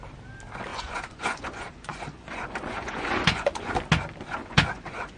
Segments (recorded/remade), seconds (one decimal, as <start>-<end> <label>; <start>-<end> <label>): 0.0-0.7 recorded; 0.7-3.7 remade; 3.7-4.4 recorded; 4.4-5.2 remade